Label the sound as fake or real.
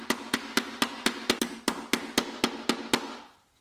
real